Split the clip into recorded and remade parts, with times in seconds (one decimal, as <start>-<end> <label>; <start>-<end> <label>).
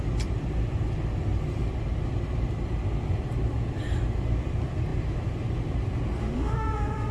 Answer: 0.0-6.2 recorded; 6.2-7.1 remade